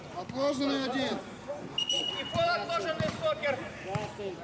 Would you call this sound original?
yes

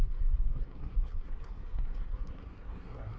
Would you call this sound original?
no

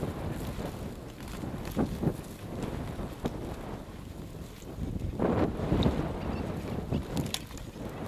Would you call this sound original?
yes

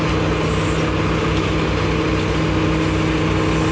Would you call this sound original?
yes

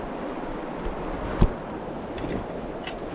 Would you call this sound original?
yes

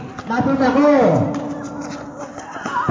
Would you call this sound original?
yes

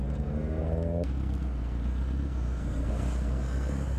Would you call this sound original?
no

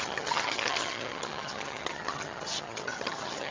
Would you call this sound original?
no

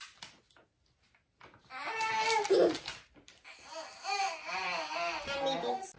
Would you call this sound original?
yes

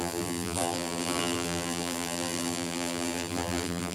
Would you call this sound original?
no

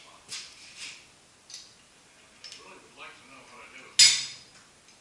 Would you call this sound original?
yes